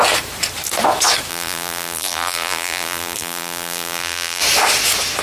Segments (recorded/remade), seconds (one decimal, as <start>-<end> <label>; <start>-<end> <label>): 0.0-1.3 recorded; 1.3-4.4 remade; 4.4-5.2 recorded